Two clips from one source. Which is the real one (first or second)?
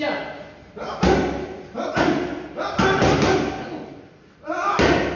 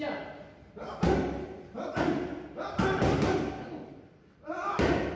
first